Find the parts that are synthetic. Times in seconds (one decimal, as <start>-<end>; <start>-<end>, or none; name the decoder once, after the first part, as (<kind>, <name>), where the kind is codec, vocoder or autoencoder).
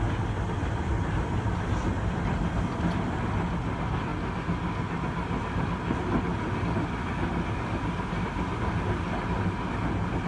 none